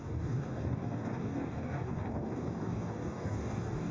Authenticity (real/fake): fake